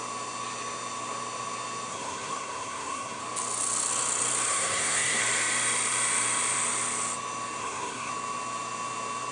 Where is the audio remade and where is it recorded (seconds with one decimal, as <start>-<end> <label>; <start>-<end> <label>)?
0.0-1.9 recorded; 1.9-3.2 remade; 3.2-4.5 recorded; 4.5-5.2 remade; 5.2-7.6 recorded; 7.6-8.1 remade; 8.1-9.3 recorded